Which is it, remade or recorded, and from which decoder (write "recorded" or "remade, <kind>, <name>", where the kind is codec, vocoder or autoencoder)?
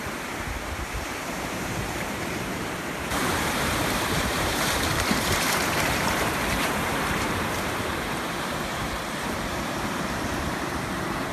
remade, vocoder, BigVGAN v2